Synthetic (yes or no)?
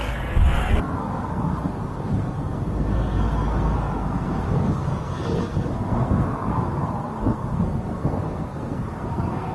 yes